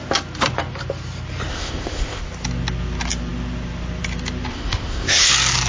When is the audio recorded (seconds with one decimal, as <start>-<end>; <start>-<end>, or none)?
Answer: 0.0-1.5; 2.2-4.5; 5.3-5.7